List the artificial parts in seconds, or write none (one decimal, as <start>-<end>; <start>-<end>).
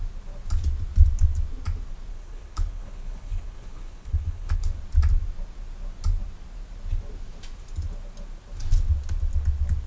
2.1-4.7